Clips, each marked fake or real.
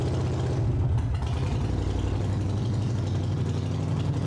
real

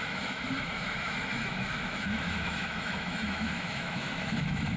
fake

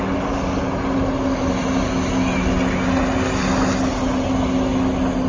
real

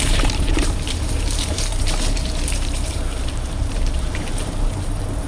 fake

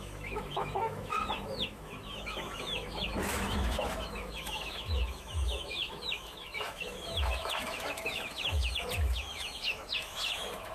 fake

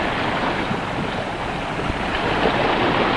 real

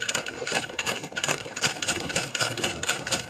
fake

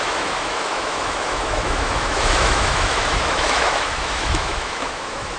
fake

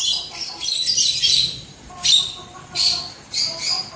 real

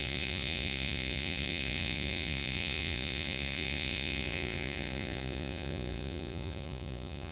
fake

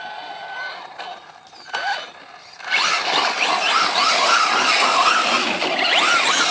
real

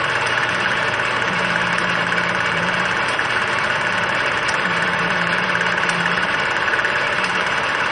fake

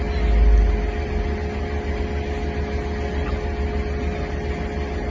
real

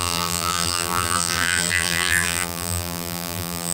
fake